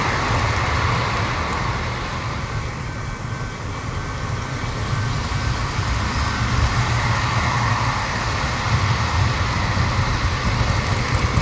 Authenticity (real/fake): real